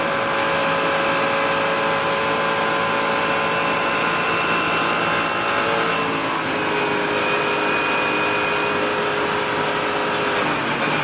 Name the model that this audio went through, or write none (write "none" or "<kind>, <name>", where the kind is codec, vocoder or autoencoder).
none